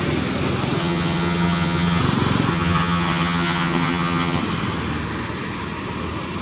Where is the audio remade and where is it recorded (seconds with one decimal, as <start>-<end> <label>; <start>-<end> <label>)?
0.0-0.8 recorded; 0.8-2.0 remade; 2.0-2.5 recorded; 2.5-4.4 remade; 4.4-6.4 recorded